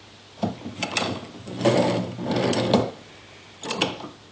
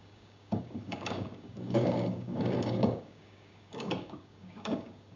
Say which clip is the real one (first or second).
first